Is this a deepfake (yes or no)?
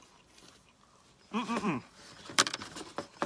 yes